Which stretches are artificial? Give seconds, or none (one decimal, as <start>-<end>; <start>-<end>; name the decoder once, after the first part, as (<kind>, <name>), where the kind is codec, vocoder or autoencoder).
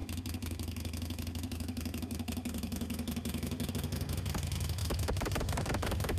0.0-6.2 (autoencoder, DAC-VAE)